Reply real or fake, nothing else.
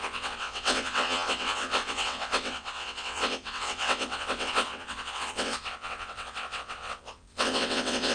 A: fake